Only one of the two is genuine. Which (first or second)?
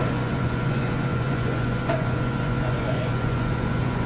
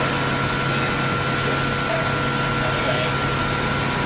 second